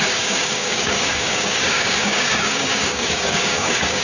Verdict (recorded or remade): remade